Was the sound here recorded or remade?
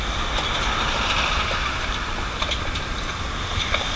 recorded